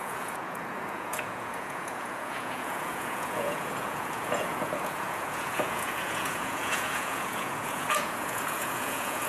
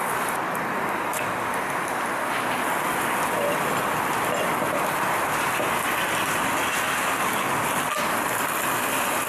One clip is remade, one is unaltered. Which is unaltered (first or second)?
second